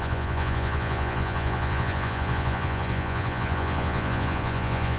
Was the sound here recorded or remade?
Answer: remade